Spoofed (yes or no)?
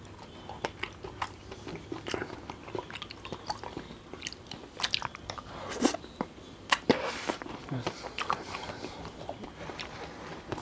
no